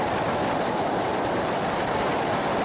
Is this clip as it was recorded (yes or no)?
yes